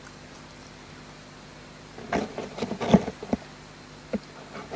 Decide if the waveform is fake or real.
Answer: real